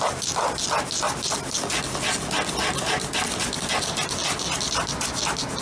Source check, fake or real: real